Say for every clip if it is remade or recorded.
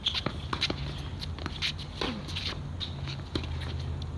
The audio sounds recorded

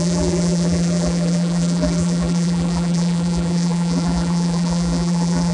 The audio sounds remade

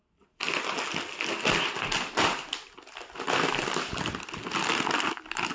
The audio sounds recorded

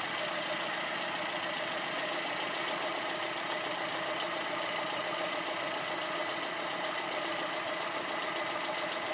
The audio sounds recorded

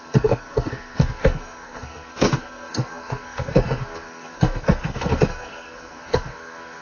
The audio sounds remade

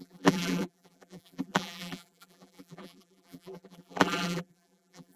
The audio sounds remade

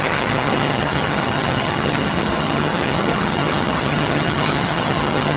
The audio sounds remade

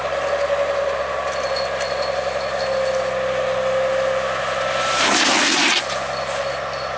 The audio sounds recorded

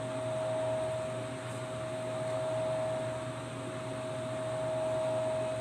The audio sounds recorded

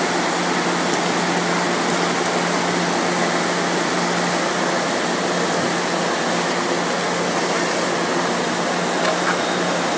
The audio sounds recorded